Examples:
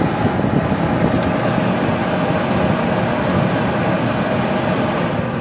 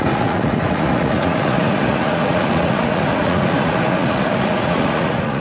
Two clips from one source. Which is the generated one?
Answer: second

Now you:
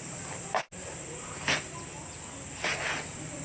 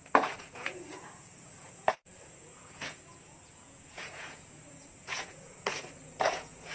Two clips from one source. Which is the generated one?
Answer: second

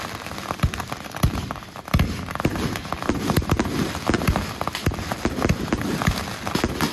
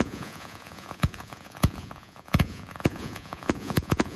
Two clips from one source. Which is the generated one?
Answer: second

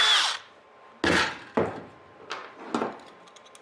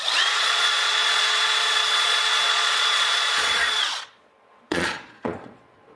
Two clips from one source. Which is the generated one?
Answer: second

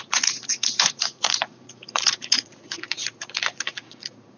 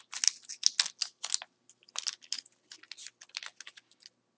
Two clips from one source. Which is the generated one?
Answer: first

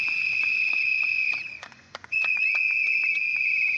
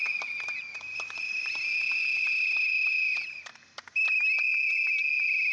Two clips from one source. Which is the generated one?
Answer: first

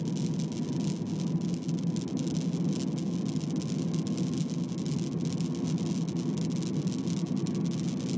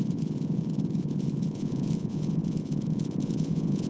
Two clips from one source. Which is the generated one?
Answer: second